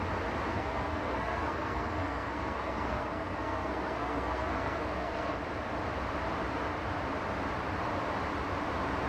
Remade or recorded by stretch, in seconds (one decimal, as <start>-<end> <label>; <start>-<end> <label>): 0.0-0.5 recorded; 0.5-5.4 remade; 5.4-9.1 recorded